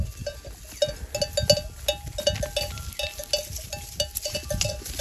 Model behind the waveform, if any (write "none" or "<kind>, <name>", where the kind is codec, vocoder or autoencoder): none